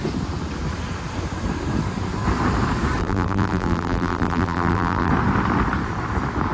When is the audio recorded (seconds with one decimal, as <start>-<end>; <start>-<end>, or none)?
0.0-3.0; 5.1-6.5